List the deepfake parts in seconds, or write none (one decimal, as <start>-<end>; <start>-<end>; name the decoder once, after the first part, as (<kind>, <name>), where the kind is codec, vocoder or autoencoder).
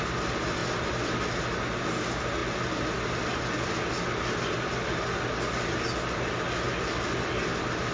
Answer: none